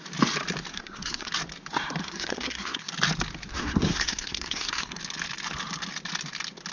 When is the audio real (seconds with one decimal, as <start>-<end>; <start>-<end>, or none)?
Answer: 0.0-0.7; 1.3-2.0; 2.9-3.5; 5.0-6.7